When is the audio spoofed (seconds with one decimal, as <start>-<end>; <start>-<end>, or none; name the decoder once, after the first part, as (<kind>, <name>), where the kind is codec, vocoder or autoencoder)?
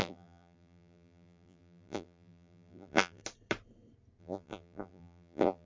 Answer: 0.0-3.2 (vocoder, BigVGAN v2); 4.2-5.7